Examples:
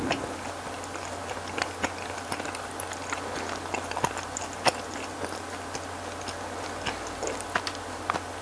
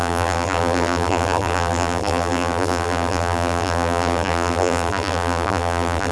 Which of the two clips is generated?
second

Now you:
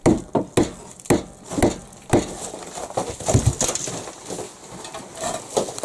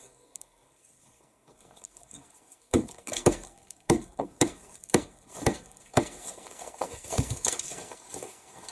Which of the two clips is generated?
second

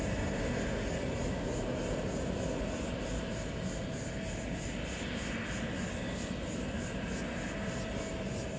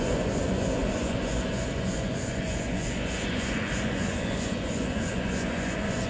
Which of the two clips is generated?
second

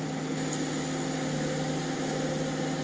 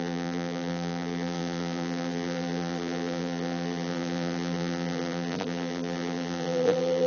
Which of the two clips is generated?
second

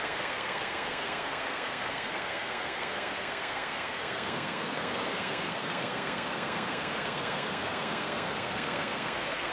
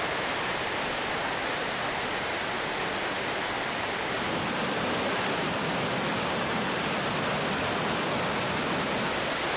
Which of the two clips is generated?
first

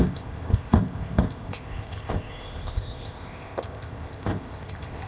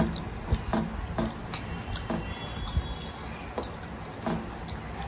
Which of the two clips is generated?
first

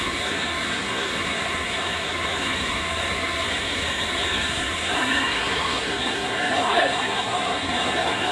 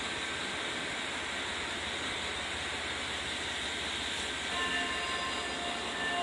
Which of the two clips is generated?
first